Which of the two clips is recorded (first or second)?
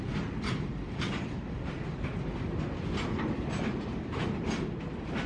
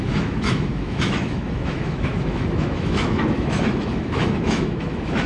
first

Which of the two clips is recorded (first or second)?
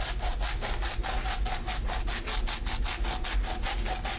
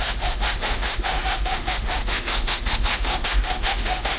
first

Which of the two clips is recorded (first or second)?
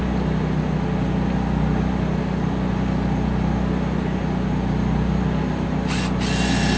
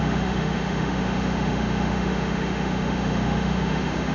first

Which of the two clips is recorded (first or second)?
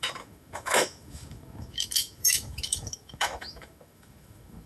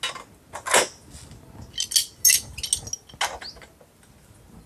second